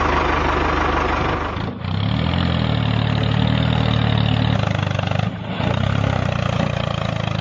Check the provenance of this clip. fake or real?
real